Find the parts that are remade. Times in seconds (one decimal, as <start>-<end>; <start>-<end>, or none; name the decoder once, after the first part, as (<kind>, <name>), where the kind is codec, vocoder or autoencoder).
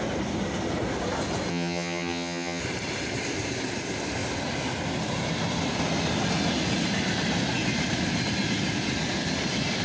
1.5-2.6 (vocoder, HiFi-GAN)